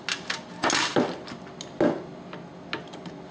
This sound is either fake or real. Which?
real